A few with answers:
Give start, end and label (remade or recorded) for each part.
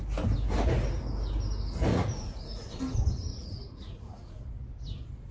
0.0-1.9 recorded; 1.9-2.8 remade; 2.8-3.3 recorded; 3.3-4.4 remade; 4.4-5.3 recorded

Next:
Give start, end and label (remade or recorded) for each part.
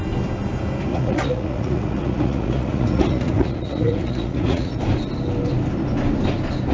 0.0-0.9 recorded; 0.9-4.8 remade; 4.8-6.7 recorded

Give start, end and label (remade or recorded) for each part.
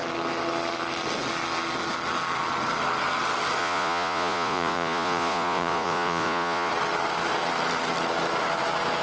0.0-3.6 recorded; 3.6-6.7 remade; 6.7-9.0 recorded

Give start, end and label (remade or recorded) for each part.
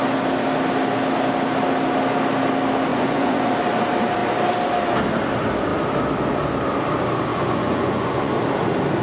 0.0-2.9 recorded; 2.9-3.5 remade; 3.5-7.3 recorded; 7.3-8.3 remade; 8.3-9.0 recorded